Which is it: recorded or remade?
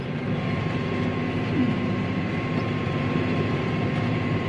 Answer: remade